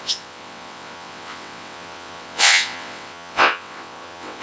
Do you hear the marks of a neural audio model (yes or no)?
yes